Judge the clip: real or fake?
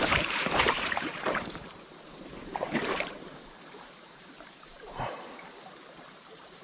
fake